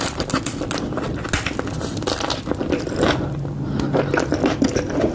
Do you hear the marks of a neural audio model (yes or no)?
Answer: no